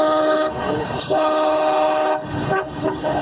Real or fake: fake